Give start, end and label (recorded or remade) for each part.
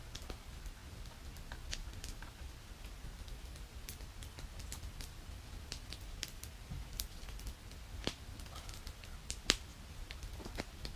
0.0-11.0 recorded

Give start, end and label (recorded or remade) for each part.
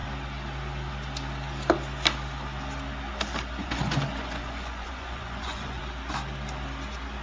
0.0-3.6 recorded; 3.6-5.8 remade; 5.8-7.2 recorded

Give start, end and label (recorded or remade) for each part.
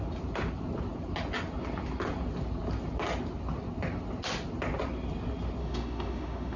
0.0-5.6 recorded; 5.6-6.6 remade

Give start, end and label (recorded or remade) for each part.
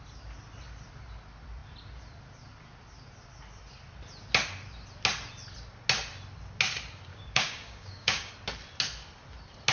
0.0-7.1 recorded; 7.1-8.3 remade; 8.3-9.7 recorded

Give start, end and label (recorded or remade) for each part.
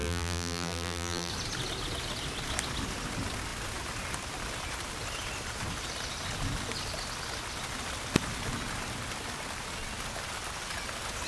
0.0-1.3 remade; 1.3-11.3 recorded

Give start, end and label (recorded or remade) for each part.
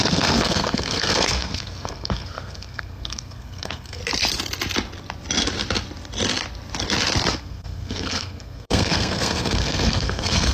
0.0-4.0 remade; 4.0-7.4 recorded; 7.4-10.5 remade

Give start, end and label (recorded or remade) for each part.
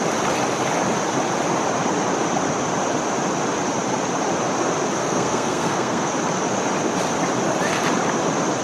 0.0-5.0 recorded; 5.0-6.1 remade; 6.1-8.6 recorded